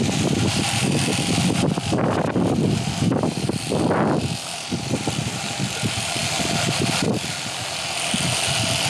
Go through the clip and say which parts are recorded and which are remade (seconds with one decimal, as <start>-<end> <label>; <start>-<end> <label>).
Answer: 0.0-8.9 recorded